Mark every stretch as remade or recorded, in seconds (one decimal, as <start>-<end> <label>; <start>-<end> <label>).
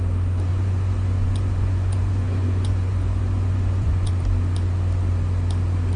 0.0-0.5 recorded; 0.5-4.1 remade; 4.1-6.0 recorded